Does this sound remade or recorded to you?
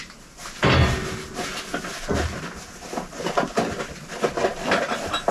recorded